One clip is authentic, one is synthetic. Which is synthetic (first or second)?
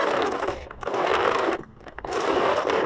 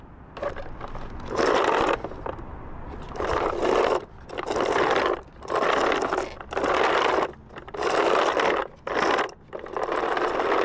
first